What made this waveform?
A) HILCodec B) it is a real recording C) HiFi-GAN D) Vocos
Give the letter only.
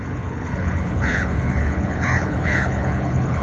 A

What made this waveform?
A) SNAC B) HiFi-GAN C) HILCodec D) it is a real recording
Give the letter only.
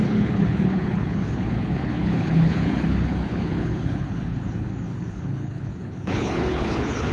C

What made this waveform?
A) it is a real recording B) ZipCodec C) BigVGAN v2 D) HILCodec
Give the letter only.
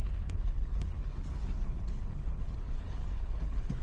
D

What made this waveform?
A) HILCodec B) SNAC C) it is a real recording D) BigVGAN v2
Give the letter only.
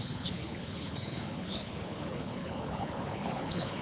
A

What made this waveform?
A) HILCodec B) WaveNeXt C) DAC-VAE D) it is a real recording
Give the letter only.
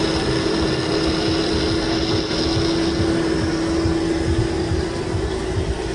D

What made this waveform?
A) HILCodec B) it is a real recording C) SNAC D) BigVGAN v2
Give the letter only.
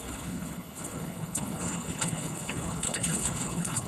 A